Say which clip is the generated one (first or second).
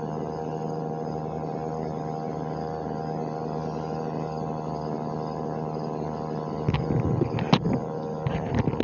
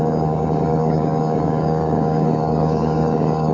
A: second